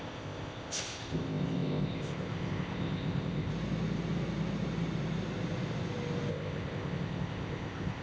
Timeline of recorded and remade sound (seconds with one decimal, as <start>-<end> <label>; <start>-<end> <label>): 0.0-3.5 remade; 3.5-6.3 recorded; 6.3-8.0 remade